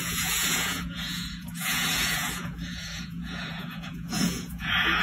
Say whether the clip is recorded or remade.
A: remade